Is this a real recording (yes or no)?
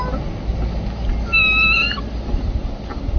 yes